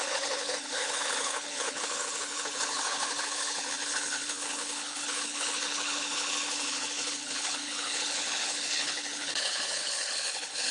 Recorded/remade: remade